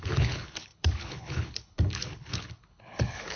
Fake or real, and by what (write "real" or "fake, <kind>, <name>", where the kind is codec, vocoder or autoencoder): fake, codec, HILCodec